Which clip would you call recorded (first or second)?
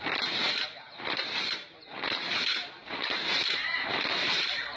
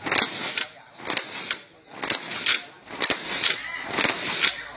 second